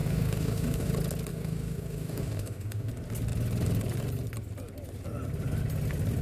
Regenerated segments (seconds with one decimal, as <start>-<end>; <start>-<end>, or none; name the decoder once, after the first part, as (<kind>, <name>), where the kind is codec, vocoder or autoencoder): 0.0-0.9 (codec, DAC); 1.3-2.9